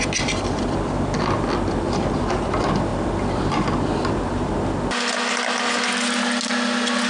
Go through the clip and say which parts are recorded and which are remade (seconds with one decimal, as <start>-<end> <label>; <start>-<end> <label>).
0.0-7.1 recorded